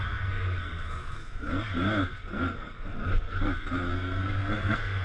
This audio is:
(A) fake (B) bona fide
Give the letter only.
A